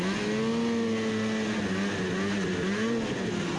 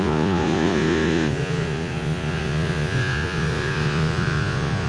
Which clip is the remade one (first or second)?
second